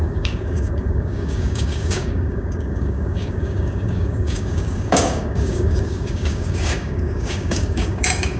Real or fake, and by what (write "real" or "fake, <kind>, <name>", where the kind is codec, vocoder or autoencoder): fake, codec, DAC